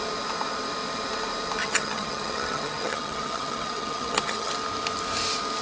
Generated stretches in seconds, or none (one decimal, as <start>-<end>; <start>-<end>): 1.6-4.5